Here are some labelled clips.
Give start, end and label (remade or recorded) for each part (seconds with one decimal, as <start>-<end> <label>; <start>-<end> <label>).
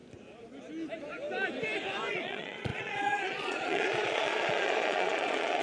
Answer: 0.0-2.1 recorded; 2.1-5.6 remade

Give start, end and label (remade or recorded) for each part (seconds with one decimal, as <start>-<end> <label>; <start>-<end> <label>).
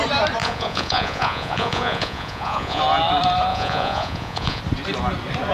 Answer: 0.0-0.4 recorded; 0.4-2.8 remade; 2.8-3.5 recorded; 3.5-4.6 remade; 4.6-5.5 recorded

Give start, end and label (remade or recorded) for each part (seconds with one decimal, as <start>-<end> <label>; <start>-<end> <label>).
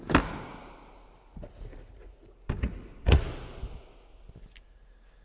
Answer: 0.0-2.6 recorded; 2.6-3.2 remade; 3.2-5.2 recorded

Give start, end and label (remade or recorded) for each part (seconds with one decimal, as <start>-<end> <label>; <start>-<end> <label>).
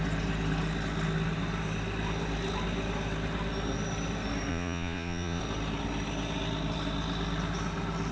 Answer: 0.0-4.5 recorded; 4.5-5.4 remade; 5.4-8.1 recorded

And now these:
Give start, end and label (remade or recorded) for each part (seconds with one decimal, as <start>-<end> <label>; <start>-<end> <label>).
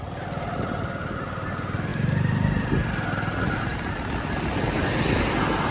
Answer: 0.0-5.7 recorded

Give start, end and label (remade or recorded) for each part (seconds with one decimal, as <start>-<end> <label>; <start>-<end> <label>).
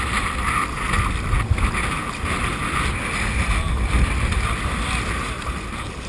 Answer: 0.0-6.1 recorded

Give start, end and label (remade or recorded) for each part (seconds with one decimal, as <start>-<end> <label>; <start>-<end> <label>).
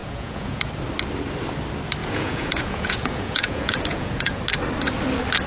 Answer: 0.0-0.7 remade; 0.7-2.0 recorded; 2.0-4.4 remade; 4.4-5.5 recorded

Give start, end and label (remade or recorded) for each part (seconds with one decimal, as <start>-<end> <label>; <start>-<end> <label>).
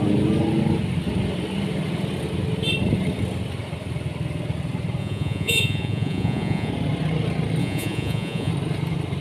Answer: 0.0-5.0 recorded; 5.0-6.7 remade; 6.7-7.6 recorded; 7.6-8.5 remade; 8.5-9.2 recorded